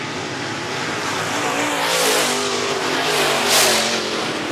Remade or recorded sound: recorded